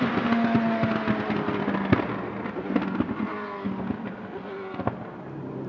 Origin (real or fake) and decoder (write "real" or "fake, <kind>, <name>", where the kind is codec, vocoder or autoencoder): real